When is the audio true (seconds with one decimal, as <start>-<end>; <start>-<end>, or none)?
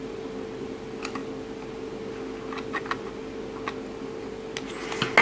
0.0-5.2